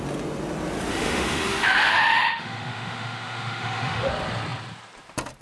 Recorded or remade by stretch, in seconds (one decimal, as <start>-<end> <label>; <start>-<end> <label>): 0.0-0.9 recorded; 0.9-4.1 remade; 4.1-5.4 recorded